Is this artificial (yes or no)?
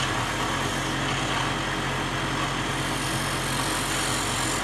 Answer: no